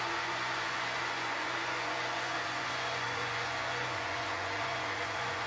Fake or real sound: fake